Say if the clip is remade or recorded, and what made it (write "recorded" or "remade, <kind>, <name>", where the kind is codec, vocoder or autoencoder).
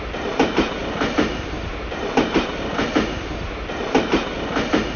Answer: remade, vocoder, BigVGAN v2